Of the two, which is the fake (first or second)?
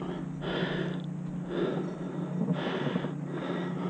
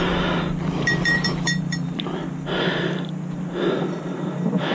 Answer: second